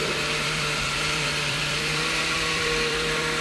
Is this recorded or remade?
remade